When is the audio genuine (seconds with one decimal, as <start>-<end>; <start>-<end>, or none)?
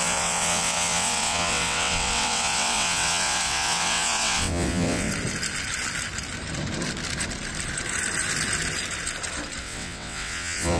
5.1-9.6